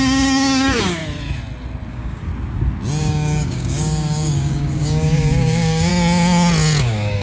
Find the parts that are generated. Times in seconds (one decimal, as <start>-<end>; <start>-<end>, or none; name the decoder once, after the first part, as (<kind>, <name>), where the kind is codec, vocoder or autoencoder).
0.0-1.0 (codec, DAC); 1.9-2.3; 3.0-5.9; 6.8-7.2

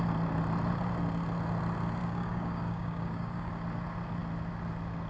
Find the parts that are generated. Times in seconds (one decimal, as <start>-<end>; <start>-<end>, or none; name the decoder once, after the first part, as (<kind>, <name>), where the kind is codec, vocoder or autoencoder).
2.0-3.5 (codec, DAC)